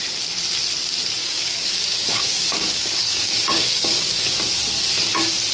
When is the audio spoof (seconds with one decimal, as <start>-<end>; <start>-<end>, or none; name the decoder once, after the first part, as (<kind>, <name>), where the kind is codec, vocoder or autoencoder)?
1.2-4.2 (codec, DAC)